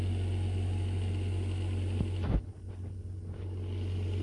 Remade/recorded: recorded